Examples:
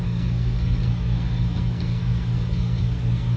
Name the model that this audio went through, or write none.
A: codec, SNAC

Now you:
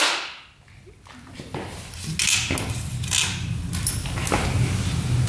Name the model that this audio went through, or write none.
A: none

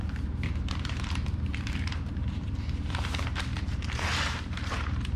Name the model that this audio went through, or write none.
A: vocoder, BigVGAN v2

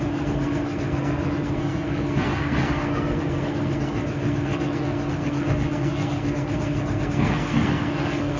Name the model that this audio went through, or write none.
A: codec, SNAC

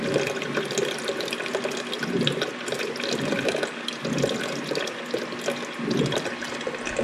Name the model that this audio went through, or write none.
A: none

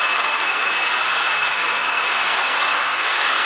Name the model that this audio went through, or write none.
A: codec, SNAC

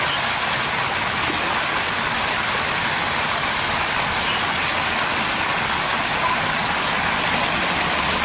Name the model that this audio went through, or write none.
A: none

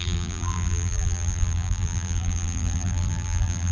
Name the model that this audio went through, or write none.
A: vocoder, BigVGAN v2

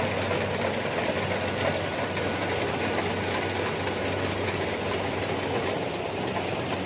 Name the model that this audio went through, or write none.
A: none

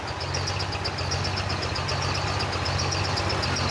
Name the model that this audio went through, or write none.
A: none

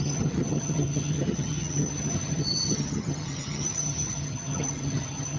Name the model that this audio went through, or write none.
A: vocoder, HiFi-GAN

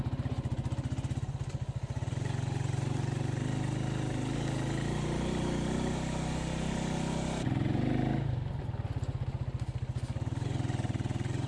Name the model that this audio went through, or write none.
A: none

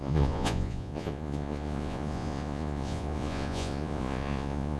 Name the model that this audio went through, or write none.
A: vocoder, Vocos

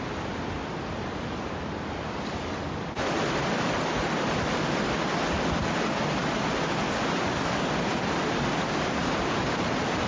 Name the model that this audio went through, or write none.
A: none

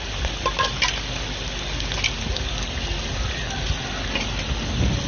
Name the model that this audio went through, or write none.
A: none